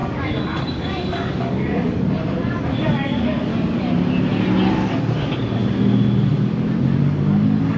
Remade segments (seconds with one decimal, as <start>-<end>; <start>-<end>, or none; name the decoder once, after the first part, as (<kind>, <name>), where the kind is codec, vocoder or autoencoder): 0.0-3.5 (codec, DAC); 4.9-5.6; 7.0-7.8

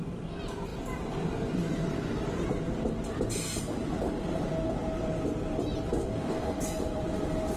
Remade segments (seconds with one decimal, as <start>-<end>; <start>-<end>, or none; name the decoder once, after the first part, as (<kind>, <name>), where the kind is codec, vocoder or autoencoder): 6.0-6.6 (codec, DAC)